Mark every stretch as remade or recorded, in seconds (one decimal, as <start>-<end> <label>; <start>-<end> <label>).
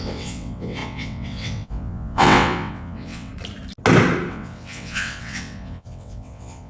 0.0-3.3 remade; 3.3-4.3 recorded; 4.3-6.7 remade